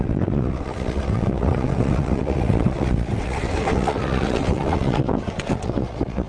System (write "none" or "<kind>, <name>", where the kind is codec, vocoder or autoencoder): vocoder, WaveNeXt